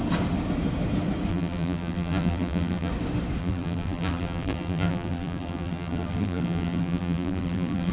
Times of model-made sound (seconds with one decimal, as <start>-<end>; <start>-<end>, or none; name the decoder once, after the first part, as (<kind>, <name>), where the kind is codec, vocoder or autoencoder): 1.3-2.9 (vocoder, BigVGAN v2); 3.4-7.9

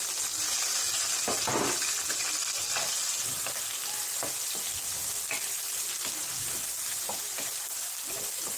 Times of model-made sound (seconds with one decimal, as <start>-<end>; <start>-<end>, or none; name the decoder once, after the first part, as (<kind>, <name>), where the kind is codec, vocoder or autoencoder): none

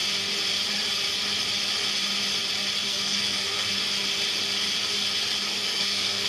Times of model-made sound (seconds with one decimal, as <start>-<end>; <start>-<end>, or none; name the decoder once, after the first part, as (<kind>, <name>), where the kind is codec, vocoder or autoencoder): 2.8-3.8 (codec, SNAC); 5.5-6.3

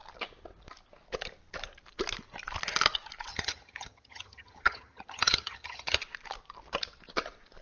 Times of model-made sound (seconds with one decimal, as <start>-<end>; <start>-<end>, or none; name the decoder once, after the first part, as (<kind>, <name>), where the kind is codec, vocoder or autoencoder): 3.3-6.0 (vocoder, HiFi-GAN)

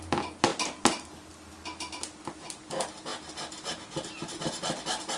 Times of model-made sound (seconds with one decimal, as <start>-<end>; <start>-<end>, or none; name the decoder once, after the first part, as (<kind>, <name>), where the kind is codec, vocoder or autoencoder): none